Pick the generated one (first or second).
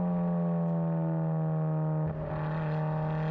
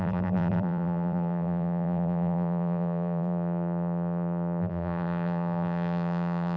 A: second